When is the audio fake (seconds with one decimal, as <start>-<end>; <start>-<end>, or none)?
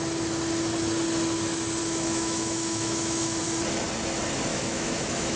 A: 1.8-3.4; 4.5-5.4